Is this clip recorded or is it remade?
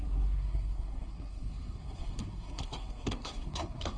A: remade